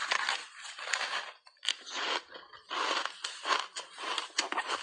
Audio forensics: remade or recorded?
recorded